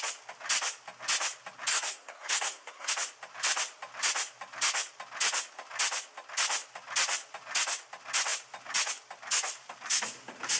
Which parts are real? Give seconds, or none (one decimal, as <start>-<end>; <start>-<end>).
0.0-1.7; 2.9-10.6